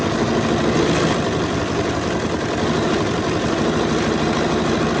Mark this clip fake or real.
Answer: real